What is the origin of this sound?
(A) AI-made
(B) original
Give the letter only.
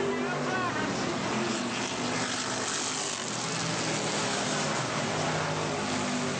B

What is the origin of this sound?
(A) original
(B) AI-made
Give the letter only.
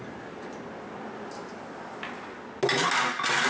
A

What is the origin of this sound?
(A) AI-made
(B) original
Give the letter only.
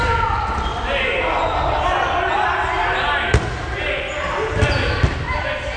B